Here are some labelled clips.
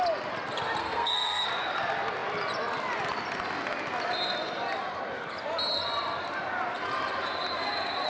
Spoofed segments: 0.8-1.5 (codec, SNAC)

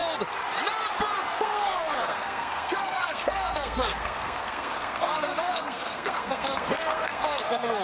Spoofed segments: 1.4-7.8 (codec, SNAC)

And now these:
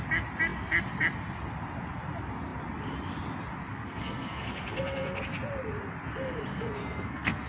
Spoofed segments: 3.7-5.2 (codec, SNAC); 6.5-7.5

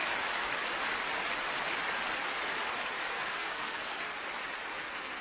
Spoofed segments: 3.1-4.1 (codec, SNAC); 4.8-5.2